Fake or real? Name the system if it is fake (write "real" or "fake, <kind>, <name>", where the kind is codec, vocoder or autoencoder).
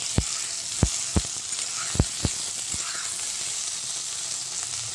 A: real